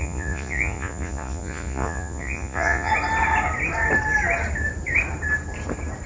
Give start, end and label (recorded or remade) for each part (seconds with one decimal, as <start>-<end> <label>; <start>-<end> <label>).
0.0-2.9 remade; 2.9-6.1 recorded